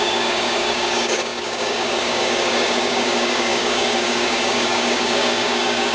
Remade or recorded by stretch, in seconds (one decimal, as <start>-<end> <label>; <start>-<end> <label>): 0.0-5.9 remade